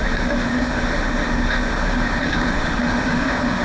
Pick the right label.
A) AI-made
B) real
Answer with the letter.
A